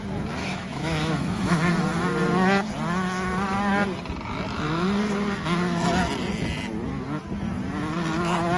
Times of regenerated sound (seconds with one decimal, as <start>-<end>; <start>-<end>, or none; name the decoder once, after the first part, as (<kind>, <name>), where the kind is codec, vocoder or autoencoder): 0.4-1.7 (autoencoder, DAC-VAE)